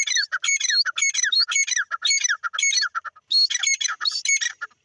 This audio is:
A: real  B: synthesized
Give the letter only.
A